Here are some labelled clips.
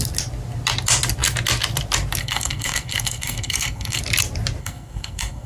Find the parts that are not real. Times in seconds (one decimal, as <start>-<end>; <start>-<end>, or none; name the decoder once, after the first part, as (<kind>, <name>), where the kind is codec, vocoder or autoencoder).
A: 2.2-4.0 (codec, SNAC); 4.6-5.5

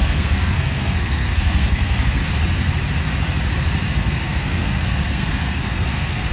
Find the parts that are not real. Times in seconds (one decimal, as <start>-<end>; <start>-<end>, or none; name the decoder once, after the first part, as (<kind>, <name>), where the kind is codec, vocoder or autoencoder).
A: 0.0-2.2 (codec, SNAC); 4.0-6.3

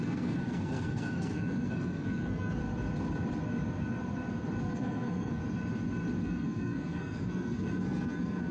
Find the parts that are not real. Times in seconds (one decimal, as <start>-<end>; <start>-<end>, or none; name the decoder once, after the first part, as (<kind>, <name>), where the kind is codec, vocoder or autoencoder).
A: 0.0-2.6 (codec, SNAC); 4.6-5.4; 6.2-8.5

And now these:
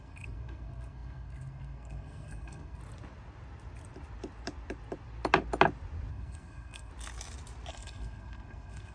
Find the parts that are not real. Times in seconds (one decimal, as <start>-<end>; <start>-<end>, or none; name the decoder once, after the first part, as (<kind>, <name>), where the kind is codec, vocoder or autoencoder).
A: 0.0-2.8 (codec, SNAC); 6.1-6.9; 7.7-8.9

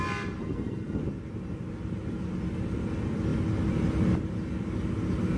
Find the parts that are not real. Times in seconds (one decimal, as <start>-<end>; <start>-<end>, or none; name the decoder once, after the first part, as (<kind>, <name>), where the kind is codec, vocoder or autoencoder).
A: 0.4-1.0 (codec, SNAC)

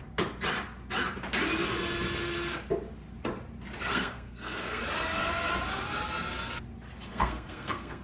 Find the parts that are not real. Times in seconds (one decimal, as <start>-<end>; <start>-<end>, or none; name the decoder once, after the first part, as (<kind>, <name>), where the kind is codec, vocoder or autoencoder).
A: 3.9-4.8 (codec, SNAC); 7.1-8.0

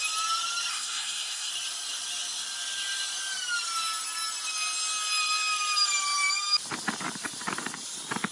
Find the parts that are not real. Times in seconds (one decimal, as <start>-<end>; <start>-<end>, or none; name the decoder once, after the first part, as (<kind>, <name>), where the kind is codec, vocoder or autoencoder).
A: 0.7-1.5 (codec, SNAC)